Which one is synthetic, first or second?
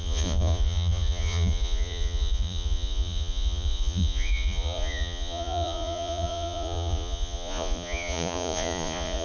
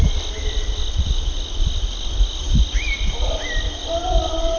first